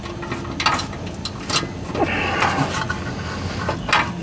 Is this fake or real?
real